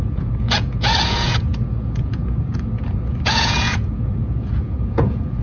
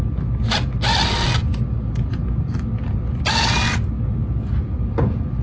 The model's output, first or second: first